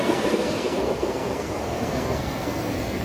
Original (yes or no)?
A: no